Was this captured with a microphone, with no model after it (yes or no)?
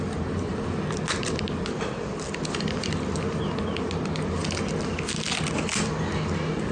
yes